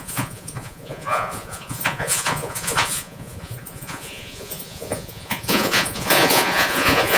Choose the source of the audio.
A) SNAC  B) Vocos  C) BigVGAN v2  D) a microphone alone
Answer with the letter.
B